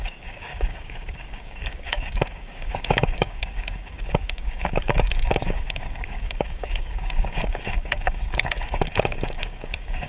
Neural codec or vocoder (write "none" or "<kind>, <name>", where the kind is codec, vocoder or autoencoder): codec, DAC